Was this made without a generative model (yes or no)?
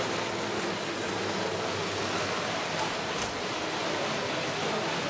yes